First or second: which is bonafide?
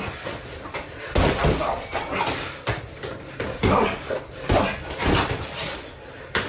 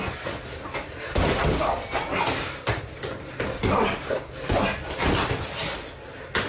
second